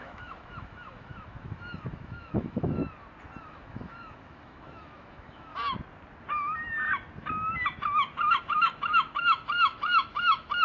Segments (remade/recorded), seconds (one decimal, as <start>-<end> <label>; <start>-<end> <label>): 0.0-2.8 remade; 2.8-3.4 recorded; 3.4-5.5 remade; 5.5-8.4 recorded; 8.4-10.6 remade